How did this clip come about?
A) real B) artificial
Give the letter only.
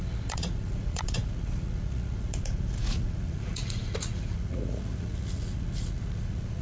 B